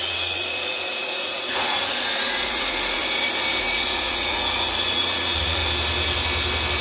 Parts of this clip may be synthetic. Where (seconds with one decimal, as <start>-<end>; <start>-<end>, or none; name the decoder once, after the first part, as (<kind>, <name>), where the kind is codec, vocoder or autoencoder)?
0.0-3.0 (vocoder, Vocos); 3.6-5.6